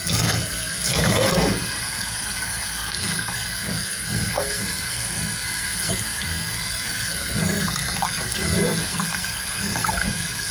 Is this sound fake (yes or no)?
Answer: yes